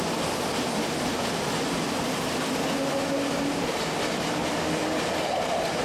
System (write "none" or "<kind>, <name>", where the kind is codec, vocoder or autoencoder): none